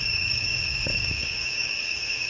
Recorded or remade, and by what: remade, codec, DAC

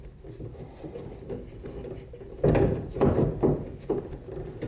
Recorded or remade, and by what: recorded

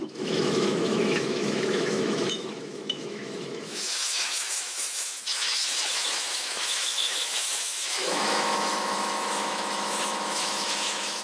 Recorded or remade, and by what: remade, autoencoder, DAC-VAE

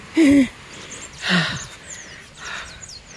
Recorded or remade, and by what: recorded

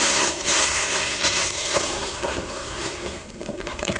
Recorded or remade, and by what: remade, codec, SNAC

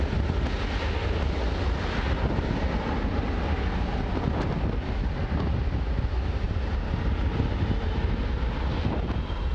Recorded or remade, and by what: recorded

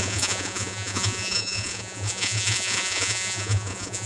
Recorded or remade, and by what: remade, vocoder, Vocos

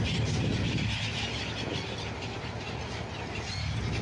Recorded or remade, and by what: recorded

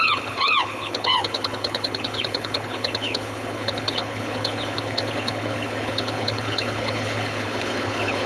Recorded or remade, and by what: remade, codec, HILCodec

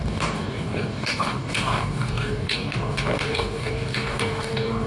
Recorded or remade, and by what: remade, codec, DAC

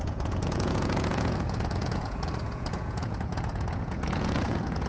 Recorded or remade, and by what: remade, vocoder, Vocos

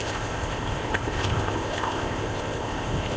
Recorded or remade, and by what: remade, codec, ZipCodec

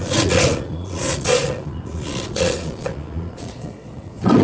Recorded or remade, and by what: remade, vocoder, Vocos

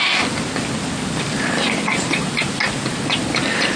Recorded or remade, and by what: recorded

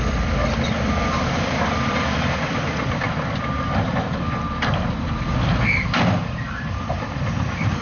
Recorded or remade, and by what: remade, vocoder, BigVGAN v2